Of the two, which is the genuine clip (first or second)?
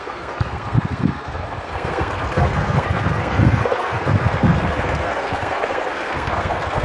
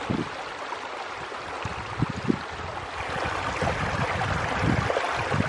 second